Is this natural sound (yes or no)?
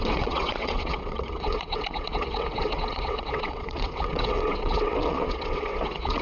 no